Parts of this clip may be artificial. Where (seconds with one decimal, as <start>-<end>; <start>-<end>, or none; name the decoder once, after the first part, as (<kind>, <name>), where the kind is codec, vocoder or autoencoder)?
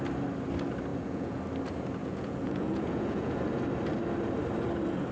0.9-1.4 (vocoder, Vocos); 2.0-3.4